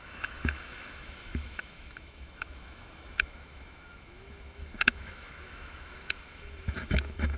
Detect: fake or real fake